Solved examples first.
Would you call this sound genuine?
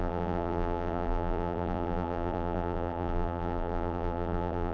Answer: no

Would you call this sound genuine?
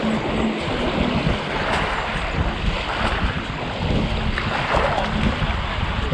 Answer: yes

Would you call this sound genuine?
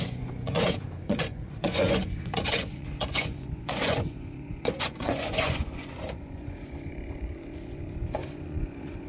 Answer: no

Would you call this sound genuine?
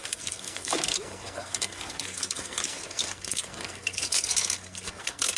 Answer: no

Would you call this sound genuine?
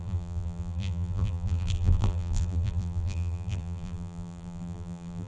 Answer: no